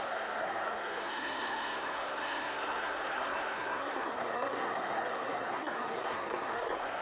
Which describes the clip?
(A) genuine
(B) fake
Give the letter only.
B